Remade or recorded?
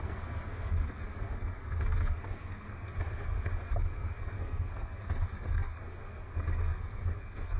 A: remade